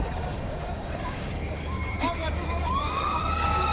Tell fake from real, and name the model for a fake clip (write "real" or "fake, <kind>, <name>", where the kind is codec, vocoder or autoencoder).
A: fake, codec, DAC